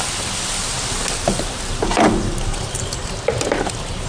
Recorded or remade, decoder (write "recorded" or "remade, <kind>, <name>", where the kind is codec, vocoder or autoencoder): recorded